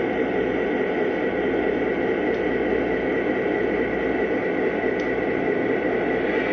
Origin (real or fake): real